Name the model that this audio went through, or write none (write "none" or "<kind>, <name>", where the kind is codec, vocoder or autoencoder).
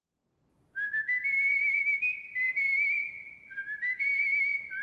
vocoder, BigVGAN v2